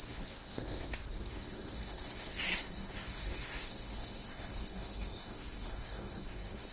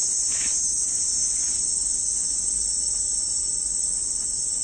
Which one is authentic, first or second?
second